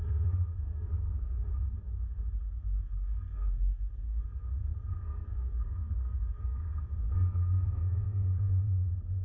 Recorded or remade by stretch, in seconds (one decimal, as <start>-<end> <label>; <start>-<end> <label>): 0.0-1.5 remade; 1.5-2.4 recorded; 2.4-9.2 remade